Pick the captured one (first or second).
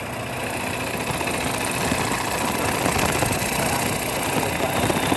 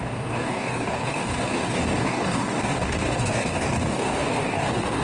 first